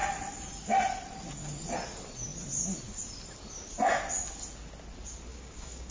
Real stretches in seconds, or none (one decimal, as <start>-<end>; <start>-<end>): 0.0-5.3

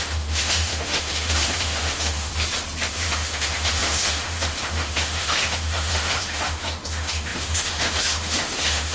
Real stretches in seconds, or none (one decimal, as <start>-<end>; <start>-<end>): 2.3-2.9

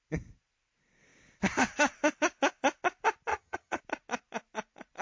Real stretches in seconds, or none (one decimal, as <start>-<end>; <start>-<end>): 0.0-3.3; 3.8-5.0